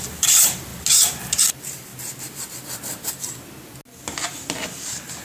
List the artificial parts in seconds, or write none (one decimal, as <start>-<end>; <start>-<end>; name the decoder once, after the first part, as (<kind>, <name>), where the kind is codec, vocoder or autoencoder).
0.0-0.7 (vocoder, BigVGAN v2); 1.3-1.9